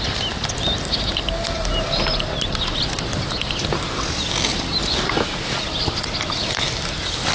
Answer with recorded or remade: recorded